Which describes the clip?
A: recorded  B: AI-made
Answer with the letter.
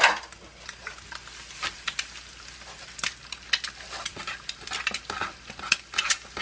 A